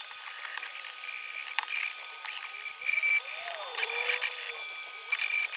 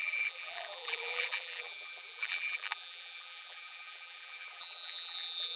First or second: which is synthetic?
second